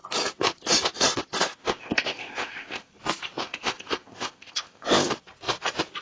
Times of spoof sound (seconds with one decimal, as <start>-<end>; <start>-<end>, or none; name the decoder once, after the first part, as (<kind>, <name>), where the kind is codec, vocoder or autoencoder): 1.6-2.9 (codec, ZipCodec); 3.4-5.1